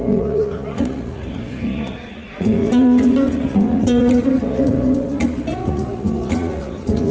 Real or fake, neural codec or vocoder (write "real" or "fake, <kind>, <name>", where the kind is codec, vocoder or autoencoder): fake, vocoder, Vocos